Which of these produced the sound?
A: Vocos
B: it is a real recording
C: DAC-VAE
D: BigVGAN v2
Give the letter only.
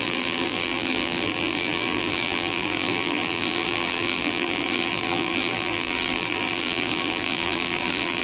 D